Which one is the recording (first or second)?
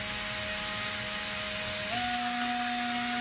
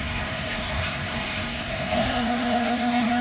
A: first